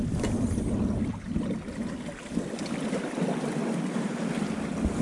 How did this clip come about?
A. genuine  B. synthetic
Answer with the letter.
A